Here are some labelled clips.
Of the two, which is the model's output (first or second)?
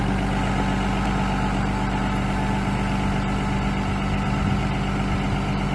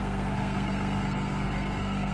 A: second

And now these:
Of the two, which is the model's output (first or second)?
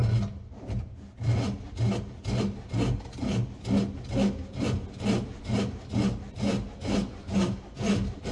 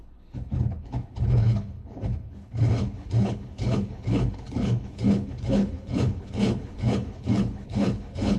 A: second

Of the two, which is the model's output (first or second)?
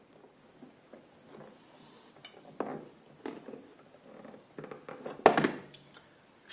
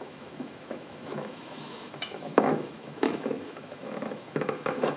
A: second